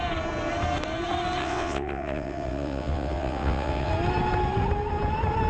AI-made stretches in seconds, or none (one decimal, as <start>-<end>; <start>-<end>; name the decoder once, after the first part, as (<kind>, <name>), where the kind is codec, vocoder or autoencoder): 1.4-3.9 (vocoder, WaveNeXt)